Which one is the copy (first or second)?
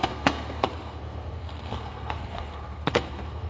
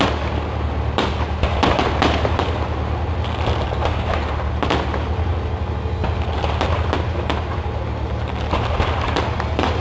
first